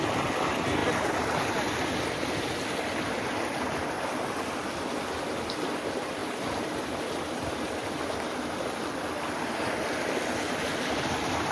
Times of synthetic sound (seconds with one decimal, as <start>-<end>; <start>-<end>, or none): none